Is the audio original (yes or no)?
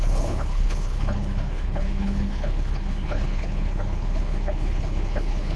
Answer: no